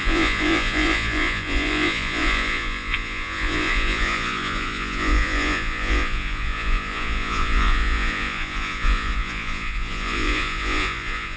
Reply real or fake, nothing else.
fake